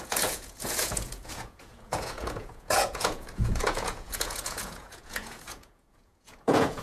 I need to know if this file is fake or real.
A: fake